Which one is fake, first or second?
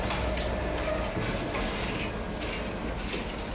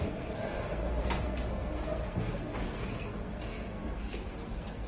second